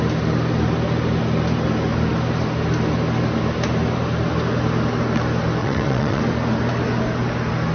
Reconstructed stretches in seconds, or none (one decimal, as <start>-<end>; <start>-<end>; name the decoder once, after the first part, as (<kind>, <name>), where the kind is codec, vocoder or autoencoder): 5.6-6.2 (vocoder, WaveNeXt)